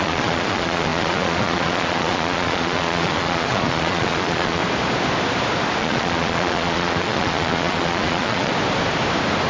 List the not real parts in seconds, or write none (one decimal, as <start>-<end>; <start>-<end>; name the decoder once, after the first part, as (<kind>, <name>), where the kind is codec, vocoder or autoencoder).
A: 0.0-4.6 (vocoder, Vocos); 5.8-8.5